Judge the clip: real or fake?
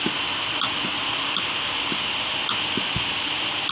real